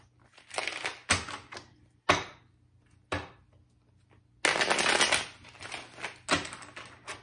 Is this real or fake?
real